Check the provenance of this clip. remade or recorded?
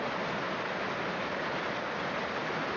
recorded